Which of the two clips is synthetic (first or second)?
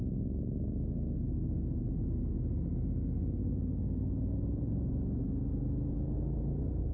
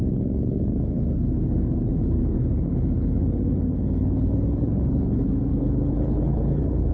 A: second